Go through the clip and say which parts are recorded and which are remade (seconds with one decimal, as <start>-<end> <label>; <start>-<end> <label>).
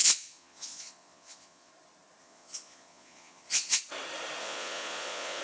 0.0-1.7 remade; 1.7-2.2 recorded; 2.2-3.8 remade; 3.8-4.4 recorded; 4.4-5.4 remade